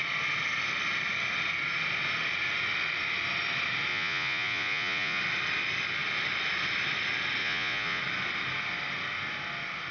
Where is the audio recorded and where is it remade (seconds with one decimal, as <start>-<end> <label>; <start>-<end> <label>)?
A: 0.0-3.9 recorded; 3.9-5.2 remade; 5.2-7.4 recorded; 7.4-8.0 remade; 8.0-9.9 recorded